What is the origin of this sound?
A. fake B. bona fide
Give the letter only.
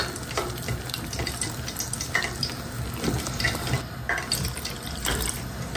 B